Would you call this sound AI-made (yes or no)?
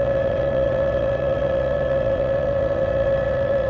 yes